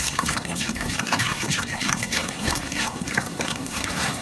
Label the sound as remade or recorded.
remade